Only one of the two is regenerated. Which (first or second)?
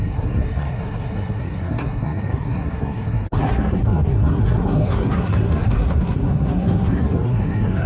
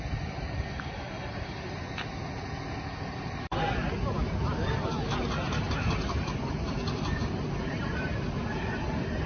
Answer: first